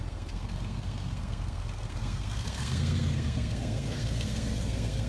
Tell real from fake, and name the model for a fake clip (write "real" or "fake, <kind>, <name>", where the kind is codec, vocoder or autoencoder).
fake, codec, SNAC